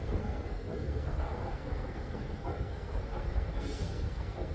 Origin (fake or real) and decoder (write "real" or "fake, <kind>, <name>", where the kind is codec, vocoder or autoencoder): fake, codec, SNAC